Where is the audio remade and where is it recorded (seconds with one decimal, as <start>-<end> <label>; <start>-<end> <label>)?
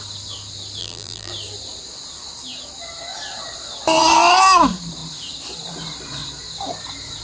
0.0-0.8 recorded; 0.8-1.3 remade; 1.3-7.2 recorded